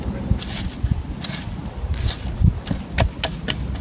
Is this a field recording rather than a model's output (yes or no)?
yes